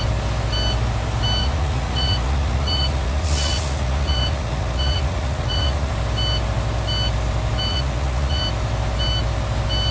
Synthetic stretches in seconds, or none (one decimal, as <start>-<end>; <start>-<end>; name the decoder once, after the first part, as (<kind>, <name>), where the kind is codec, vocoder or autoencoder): 1.4-5.9 (vocoder, Vocos); 7.7-8.4